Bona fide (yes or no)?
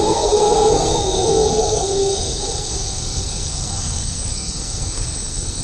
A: no